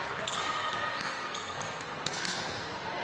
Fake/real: fake